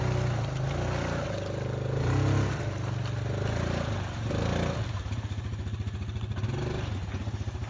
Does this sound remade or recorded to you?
recorded